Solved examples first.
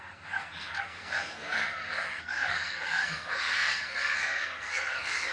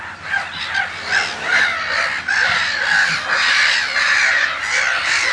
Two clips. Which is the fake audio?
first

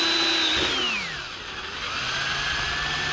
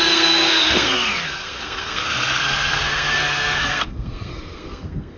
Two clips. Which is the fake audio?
second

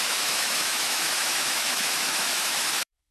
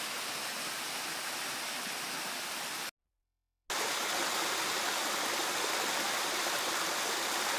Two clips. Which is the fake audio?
first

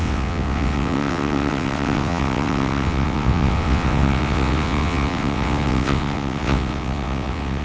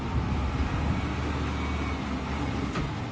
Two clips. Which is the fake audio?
first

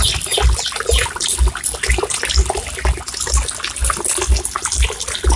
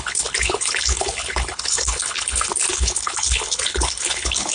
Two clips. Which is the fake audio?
second